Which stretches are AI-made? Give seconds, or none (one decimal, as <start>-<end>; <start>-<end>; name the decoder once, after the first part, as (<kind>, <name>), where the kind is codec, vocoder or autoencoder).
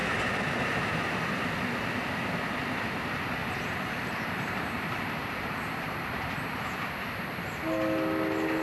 3.4-6.9 (vocoder, BigVGAN v2)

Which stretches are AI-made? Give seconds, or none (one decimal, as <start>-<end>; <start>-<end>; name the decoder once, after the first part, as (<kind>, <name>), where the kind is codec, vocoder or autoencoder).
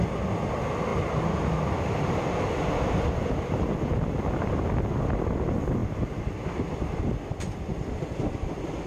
none